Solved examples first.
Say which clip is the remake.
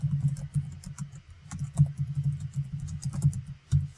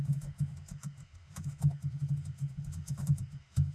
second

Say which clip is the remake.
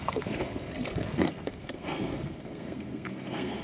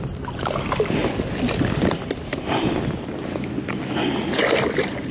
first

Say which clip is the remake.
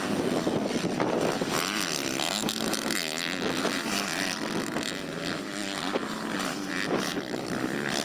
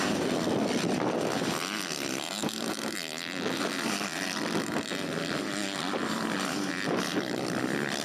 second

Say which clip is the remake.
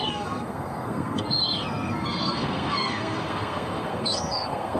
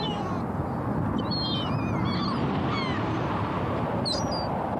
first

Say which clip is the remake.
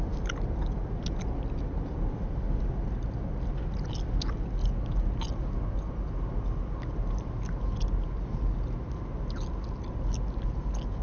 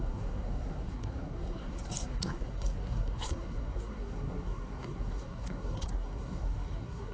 second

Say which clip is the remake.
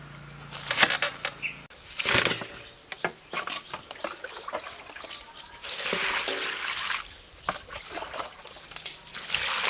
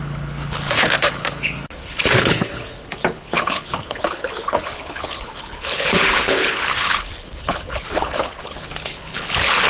second